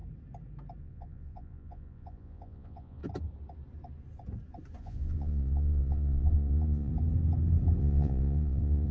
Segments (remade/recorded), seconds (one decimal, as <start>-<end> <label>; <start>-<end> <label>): 0.0-0.8 recorded; 0.8-3.0 remade; 3.0-4.8 recorded; 4.8-6.9 remade; 6.9-7.8 recorded; 7.8-8.9 remade